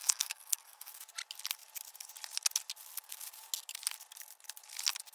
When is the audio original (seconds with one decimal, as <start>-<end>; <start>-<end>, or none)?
0.9-5.1